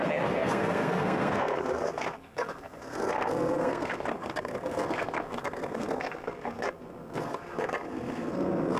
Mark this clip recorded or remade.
remade